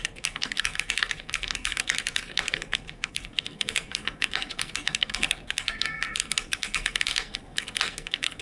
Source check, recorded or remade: remade